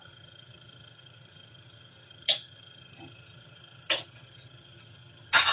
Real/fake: fake